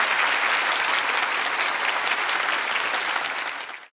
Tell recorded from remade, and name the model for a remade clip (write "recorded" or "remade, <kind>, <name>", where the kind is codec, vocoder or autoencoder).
recorded